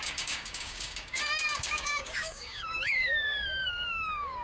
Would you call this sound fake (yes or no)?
yes